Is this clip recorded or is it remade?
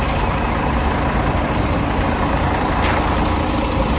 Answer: recorded